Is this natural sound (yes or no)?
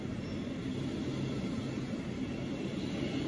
yes